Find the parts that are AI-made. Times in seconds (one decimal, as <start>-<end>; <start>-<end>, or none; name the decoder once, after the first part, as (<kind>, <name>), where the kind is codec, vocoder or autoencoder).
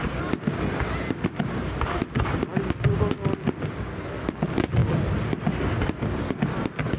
4.8-6.4 (vocoder, BigVGAN v2)